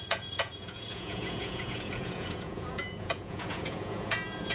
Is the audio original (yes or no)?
no